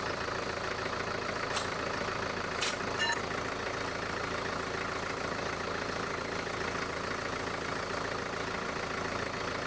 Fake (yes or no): no